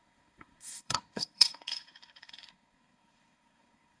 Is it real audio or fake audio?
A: fake